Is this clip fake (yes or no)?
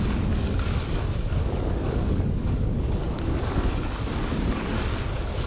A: yes